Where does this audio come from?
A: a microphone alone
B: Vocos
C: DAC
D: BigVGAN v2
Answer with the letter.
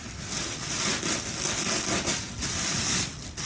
A